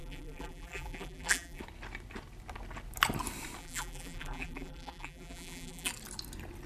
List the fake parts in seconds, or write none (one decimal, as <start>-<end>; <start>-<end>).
0.0-1.6; 3.6-5.9